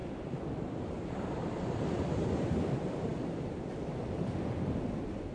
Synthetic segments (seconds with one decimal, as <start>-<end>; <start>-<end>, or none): none